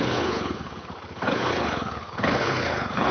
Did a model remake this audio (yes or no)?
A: yes